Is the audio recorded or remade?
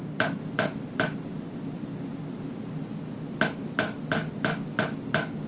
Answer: recorded